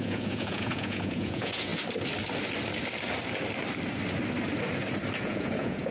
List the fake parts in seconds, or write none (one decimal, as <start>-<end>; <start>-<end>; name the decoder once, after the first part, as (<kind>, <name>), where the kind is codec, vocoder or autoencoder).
0.0-1.7 (vocoder, Vocos); 5.2-5.9